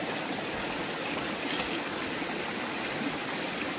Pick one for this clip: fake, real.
real